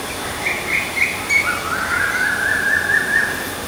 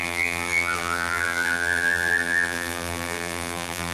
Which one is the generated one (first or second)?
second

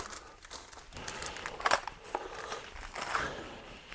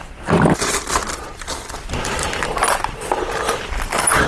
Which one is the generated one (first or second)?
second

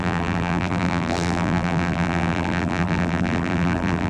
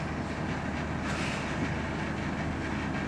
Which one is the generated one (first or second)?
first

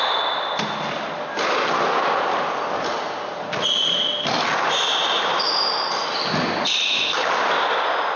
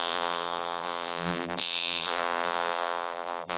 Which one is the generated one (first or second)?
second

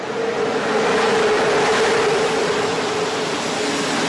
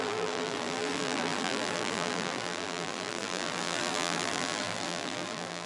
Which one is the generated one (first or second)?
second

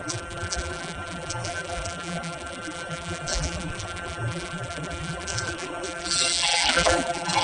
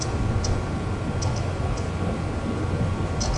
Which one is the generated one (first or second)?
first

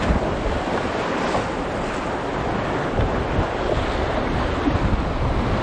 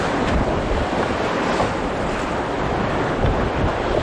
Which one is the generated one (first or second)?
second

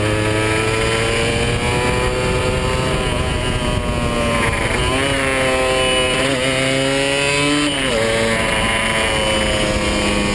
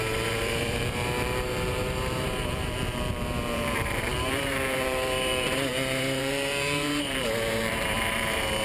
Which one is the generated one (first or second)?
second